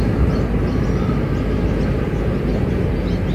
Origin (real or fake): real